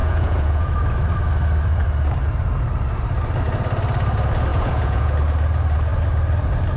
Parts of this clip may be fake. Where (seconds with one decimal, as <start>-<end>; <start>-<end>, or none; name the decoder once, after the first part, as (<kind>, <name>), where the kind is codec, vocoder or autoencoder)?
0.0-0.7 (vocoder, Vocos); 4.5-5.1